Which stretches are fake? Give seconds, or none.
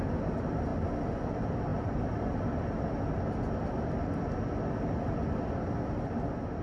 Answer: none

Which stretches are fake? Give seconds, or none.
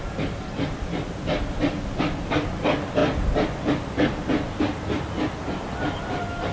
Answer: none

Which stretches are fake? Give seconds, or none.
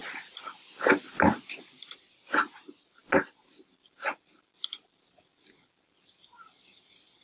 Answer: none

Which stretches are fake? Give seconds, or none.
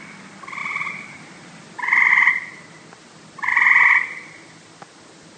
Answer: 0.6-2.1 (vocoder, BigVGAN v2)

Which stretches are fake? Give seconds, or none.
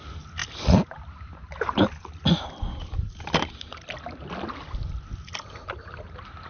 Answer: none